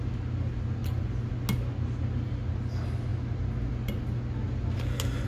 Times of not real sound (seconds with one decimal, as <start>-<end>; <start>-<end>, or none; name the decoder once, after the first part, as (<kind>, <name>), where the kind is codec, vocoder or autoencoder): none